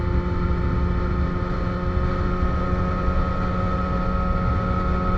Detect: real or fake real